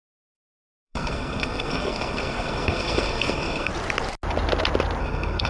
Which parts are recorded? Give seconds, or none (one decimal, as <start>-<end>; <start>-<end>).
3.7-5.0